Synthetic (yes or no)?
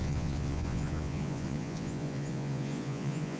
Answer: yes